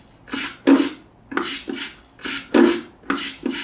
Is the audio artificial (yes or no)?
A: no